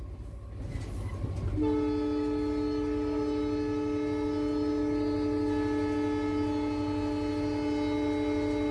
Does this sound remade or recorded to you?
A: recorded